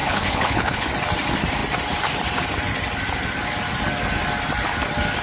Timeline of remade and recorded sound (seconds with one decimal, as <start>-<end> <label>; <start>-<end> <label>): 0.0-0.9 remade; 0.9-5.2 recorded